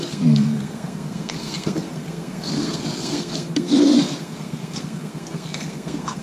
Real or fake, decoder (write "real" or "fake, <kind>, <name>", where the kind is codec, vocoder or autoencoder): fake, codec, SNAC